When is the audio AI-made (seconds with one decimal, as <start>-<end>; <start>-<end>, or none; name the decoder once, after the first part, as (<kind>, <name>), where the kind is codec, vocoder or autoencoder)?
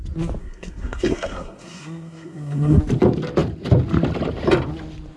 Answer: 0.4-2.8 (codec, SNAC)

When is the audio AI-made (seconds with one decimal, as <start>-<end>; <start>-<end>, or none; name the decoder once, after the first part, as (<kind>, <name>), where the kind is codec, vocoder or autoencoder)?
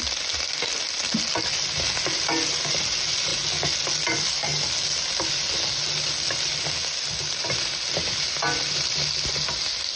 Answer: none